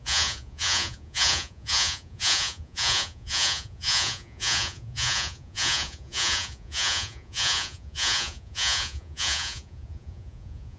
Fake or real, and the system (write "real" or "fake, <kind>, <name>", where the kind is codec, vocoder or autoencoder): fake, vocoder, Vocos